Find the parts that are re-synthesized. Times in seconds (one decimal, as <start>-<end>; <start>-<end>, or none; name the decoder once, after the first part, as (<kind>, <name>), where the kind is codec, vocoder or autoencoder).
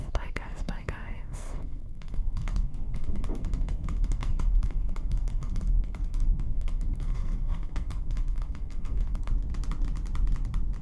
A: 0.0-9.3 (codec, SNAC)